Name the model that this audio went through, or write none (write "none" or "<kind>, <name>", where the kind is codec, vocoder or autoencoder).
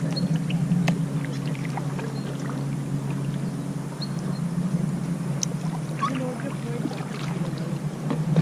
none